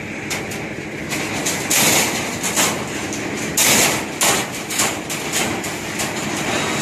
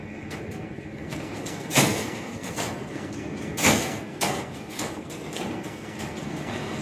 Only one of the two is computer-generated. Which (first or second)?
second